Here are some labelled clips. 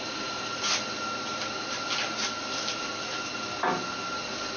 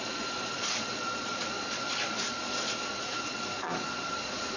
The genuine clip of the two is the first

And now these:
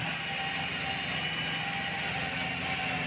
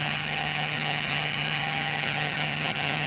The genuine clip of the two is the first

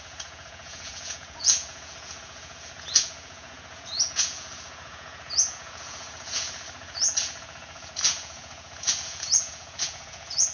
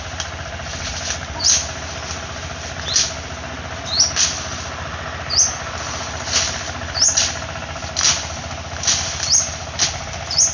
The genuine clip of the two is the second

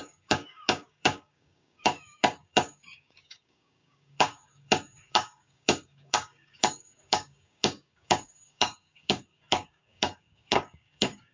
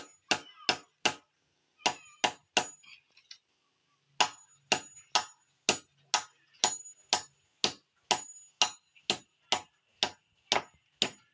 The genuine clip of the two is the second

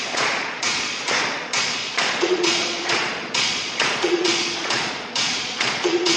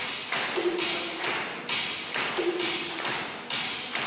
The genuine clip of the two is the second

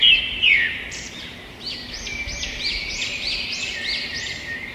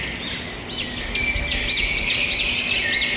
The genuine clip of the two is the second